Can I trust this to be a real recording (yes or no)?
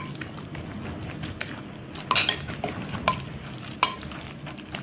yes